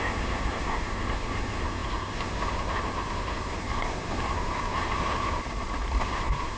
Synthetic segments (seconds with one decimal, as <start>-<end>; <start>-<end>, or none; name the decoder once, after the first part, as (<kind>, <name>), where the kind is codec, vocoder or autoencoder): 0.0-5.4 (codec, SNAC); 6.0-6.6